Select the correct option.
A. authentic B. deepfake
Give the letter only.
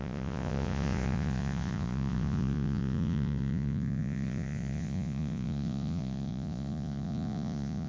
B